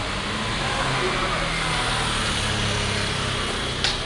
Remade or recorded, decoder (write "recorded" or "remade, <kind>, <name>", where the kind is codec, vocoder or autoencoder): recorded